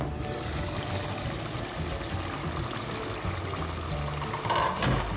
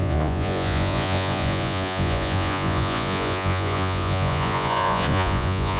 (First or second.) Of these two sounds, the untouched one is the first